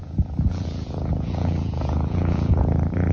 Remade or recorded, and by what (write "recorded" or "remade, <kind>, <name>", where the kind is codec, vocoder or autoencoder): remade, vocoder, Vocos